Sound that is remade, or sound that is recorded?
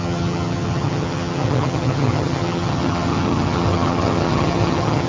remade